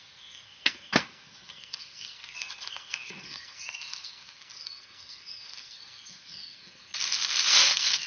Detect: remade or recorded remade